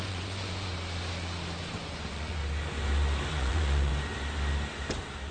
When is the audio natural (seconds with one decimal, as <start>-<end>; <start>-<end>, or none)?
0.7-1.7; 2.4-3.3; 3.9-5.3